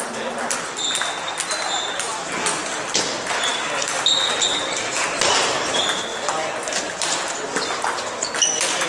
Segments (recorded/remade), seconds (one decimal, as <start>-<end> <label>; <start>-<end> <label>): 0.0-8.9 recorded